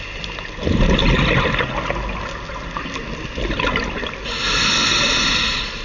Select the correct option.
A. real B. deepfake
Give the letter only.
A